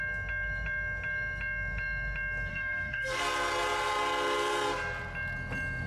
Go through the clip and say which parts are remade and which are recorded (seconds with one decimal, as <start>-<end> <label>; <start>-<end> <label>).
0.0-2.5 recorded; 2.5-3.2 remade; 3.2-5.9 recorded